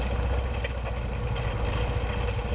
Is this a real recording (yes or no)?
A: yes